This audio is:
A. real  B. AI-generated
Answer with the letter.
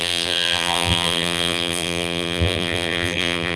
B